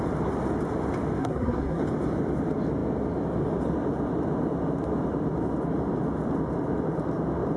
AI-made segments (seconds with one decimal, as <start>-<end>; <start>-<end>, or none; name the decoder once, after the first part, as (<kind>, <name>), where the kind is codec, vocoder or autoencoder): 1.2-1.8 (codec, SNAC)